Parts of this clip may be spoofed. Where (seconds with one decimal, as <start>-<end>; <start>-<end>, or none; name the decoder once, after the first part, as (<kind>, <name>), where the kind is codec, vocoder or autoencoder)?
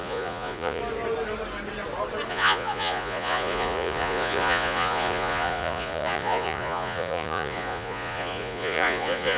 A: 0.0-0.8 (vocoder, Vocos); 2.3-9.4